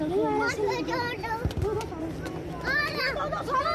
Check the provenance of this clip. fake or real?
real